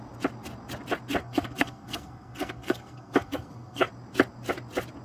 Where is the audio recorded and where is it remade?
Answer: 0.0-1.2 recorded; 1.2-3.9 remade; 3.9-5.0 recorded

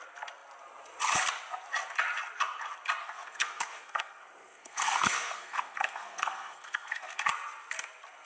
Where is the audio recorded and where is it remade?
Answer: 0.0-3.0 recorded; 3.0-7.3 remade; 7.3-8.3 recorded

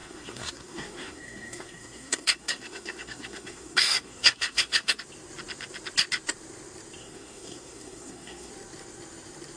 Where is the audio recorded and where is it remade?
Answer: 0.0-5.0 remade; 5.0-7.0 recorded; 7.0-8.5 remade; 8.5-9.6 recorded

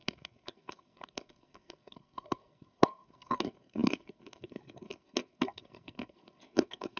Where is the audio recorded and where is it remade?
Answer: 0.0-7.0 remade